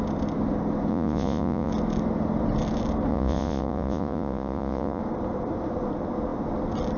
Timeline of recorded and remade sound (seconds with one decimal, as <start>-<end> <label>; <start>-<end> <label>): 0.0-0.9 recorded; 0.9-1.7 remade; 1.7-3.1 recorded; 3.1-5.0 remade; 5.0-7.0 recorded